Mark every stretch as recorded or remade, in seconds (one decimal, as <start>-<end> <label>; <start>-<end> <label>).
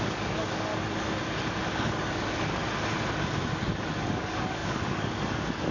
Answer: 0.0-0.7 remade; 0.7-1.7 recorded; 1.7-2.6 remade; 2.6-4.0 recorded; 4.0-5.7 remade